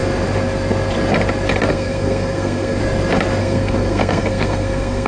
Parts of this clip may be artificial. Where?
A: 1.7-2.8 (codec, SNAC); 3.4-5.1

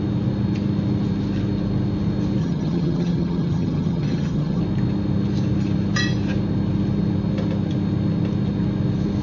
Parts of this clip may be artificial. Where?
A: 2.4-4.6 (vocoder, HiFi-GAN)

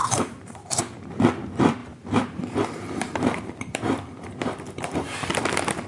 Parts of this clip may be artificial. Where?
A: 0.0-0.8 (vocoder, BigVGAN v2); 1.8-5.3